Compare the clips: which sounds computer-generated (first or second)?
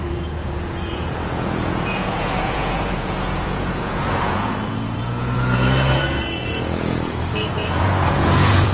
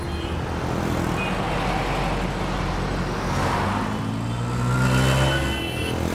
first